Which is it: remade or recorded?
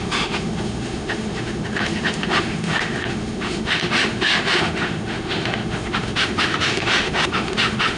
remade